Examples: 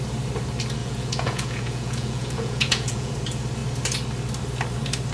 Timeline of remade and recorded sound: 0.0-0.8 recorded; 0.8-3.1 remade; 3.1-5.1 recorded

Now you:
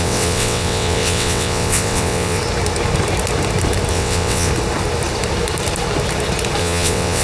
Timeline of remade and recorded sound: 0.0-2.4 remade; 2.4-3.9 recorded; 3.9-4.5 remade; 4.5-6.6 recorded; 6.6-7.2 remade

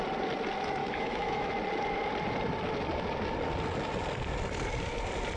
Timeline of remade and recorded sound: 0.0-0.8 recorded; 0.8-1.5 remade; 1.5-5.4 recorded

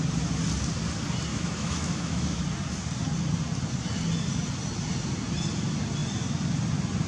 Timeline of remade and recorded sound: 0.0-1.3 recorded; 1.3-2.4 remade; 2.4-7.1 recorded

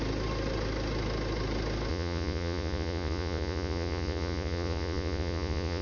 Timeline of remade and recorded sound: 0.0-1.9 recorded; 1.9-5.8 remade

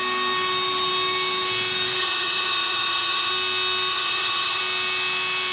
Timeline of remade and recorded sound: 0.0-2.0 recorded; 2.0-3.3 remade; 3.3-3.9 recorded; 3.9-4.6 remade; 4.6-5.5 recorded

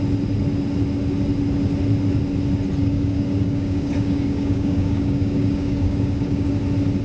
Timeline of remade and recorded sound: 0.0-2.8 recorded; 2.8-6.5 remade; 6.5-7.0 recorded

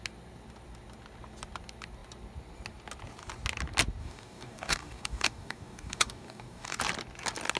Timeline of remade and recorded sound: 0.0-4.0 recorded; 4.0-6.8 remade; 6.8-7.6 recorded